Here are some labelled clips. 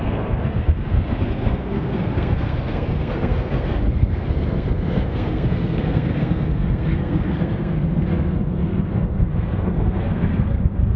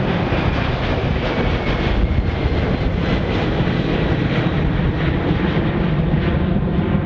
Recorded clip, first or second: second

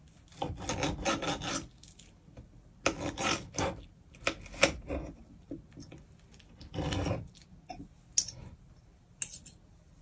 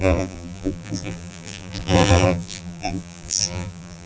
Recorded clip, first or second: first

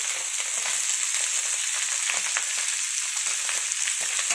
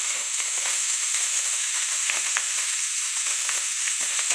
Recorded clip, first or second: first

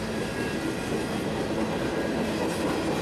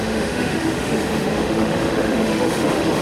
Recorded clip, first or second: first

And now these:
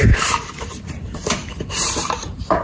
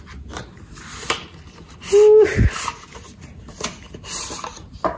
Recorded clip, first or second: second